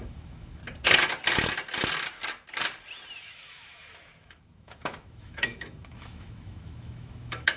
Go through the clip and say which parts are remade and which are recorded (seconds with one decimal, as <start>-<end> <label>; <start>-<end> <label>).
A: 0.0-0.6 remade; 0.6-3.2 recorded; 3.2-7.6 remade